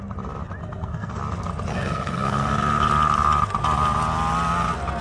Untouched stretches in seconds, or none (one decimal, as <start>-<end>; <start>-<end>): 0.0-0.6; 1.2-1.7; 2.5-5.0